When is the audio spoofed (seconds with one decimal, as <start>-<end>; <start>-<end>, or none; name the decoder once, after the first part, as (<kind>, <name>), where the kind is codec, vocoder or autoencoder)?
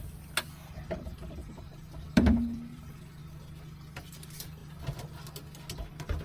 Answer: 1.4-3.2 (vocoder, BigVGAN v2)